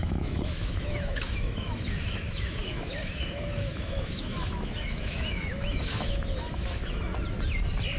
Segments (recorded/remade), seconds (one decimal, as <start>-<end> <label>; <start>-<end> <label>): 0.0-7.1 remade; 7.1-8.0 recorded